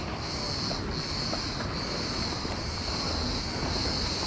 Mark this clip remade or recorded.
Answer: recorded